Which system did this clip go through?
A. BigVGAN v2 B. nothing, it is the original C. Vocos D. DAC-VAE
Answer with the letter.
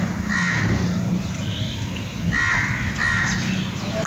B